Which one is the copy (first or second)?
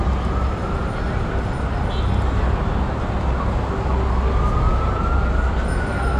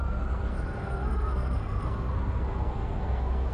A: second